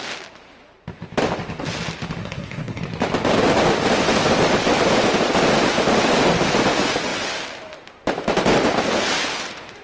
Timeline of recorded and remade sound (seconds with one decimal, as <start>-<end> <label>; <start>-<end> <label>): 0.0-2.2 recorded; 2.2-2.8 remade; 2.8-9.8 recorded